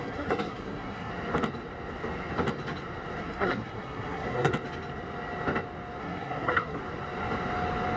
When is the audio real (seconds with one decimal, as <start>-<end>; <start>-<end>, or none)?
1.1-3.2; 4.5-6.0; 6.8-8.0